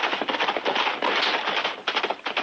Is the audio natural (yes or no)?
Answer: yes